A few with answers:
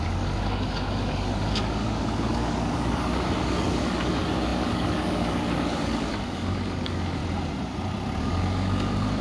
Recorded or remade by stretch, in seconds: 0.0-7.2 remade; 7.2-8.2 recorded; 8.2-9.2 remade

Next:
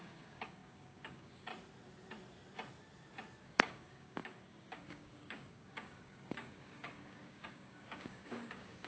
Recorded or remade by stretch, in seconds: 0.0-1.5 remade; 1.5-3.4 recorded; 3.4-8.9 remade

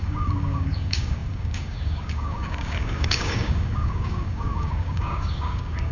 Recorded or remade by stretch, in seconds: 0.0-5.9 remade

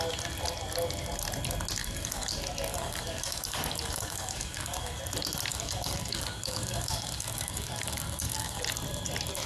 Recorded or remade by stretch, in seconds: 0.0-1.8 recorded; 1.8-2.3 remade; 2.3-2.7 recorded; 2.7-5.0 remade; 5.0-5.5 recorded; 5.5-8.6 remade; 8.6-9.5 recorded